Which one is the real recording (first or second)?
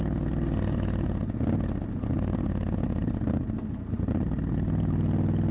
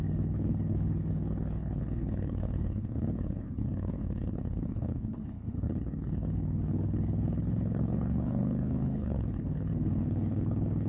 first